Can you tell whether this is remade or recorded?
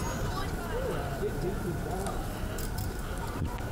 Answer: recorded